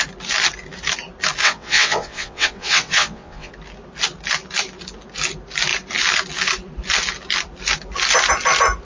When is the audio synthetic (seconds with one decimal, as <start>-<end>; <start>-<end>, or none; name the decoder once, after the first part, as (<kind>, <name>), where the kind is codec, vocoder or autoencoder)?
1.4-3.5 (vocoder, WaveNeXt)